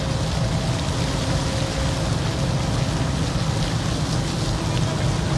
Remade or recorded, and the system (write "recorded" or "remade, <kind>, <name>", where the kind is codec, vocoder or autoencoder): recorded